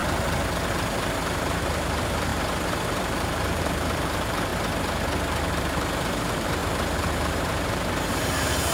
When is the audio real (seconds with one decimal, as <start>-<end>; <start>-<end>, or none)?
0.0-0.7; 4.5-5.5; 6.6-7.1